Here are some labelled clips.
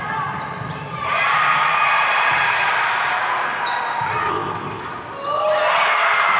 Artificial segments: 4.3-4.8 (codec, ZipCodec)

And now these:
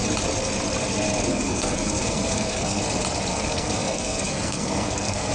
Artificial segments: 1.3-2.8 (codec, SNAC); 3.3-5.3

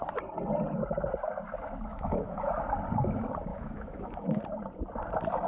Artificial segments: 1.9-2.5 (autoencoder, DAC-VAE); 3.5-4.4

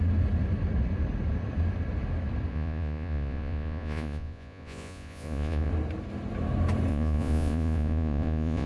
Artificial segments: 2.5-5.7 (vocoder, Vocos); 6.9-8.7

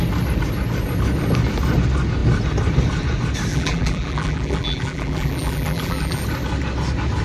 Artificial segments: 3.5-6.2 (vocoder, BigVGAN v2)